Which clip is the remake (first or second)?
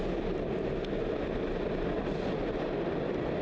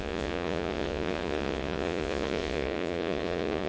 second